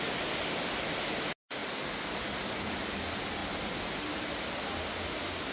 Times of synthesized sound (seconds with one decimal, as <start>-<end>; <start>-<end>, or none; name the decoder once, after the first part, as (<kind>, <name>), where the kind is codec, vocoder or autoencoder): none